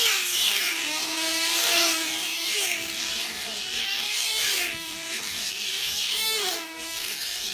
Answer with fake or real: fake